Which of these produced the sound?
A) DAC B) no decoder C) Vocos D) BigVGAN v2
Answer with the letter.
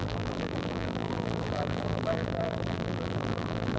D